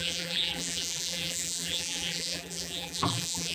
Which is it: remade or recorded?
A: remade